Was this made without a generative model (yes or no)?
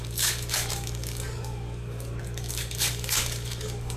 no